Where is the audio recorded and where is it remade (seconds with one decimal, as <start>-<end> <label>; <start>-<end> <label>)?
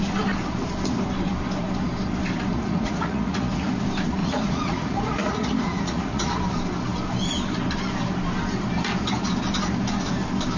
0.0-2.5 recorded; 2.5-3.7 remade; 3.7-4.2 recorded; 4.2-6.3 remade; 6.3-10.6 recorded